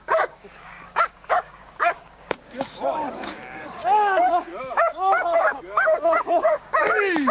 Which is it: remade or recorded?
remade